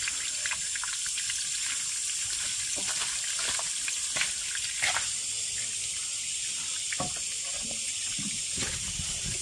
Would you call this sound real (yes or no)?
yes